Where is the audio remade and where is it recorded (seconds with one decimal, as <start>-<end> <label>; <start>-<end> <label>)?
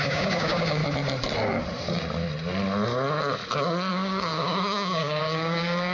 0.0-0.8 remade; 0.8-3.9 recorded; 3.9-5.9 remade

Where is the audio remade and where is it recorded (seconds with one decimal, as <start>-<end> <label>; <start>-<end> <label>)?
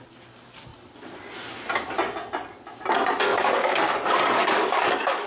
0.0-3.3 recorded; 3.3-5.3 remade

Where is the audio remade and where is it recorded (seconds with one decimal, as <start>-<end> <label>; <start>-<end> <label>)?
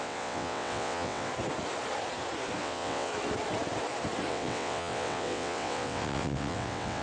0.0-1.3 remade; 1.3-2.6 recorded; 2.6-3.1 remade; 3.1-4.3 recorded; 4.3-7.0 remade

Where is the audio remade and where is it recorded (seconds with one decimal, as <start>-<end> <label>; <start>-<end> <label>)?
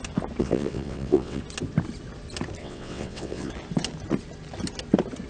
0.0-0.4 recorded; 0.4-1.4 remade; 1.4-2.6 recorded; 2.6-3.5 remade; 3.5-5.3 recorded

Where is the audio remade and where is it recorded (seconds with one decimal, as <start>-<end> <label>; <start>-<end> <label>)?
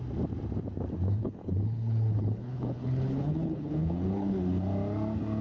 0.0-1.2 recorded; 1.2-4.4 remade; 4.4-5.4 recorded